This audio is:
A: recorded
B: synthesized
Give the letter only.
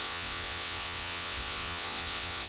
B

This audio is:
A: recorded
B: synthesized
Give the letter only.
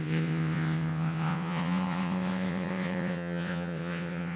B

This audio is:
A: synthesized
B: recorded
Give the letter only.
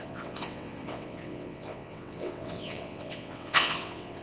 A